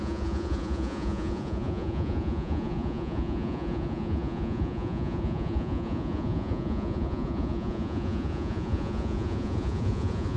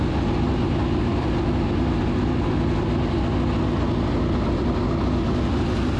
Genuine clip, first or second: second